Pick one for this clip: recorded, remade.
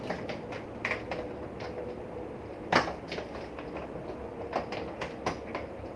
recorded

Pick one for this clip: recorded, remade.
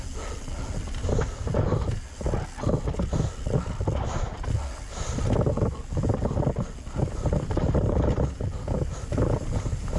recorded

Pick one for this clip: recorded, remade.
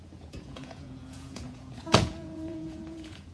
remade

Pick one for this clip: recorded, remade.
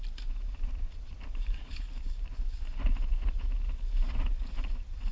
recorded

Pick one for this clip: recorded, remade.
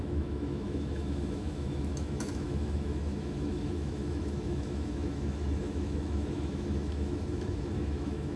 remade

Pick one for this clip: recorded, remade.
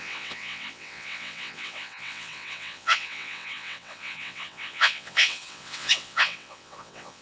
remade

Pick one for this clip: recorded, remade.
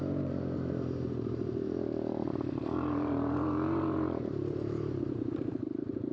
remade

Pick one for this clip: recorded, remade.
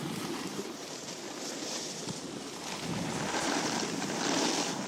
remade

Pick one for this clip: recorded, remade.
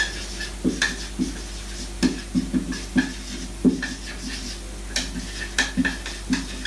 recorded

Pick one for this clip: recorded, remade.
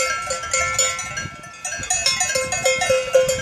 recorded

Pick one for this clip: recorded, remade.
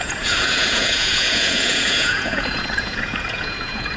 remade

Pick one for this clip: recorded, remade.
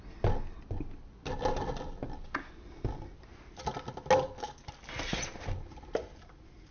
recorded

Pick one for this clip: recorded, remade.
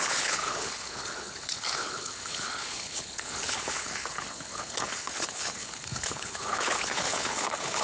remade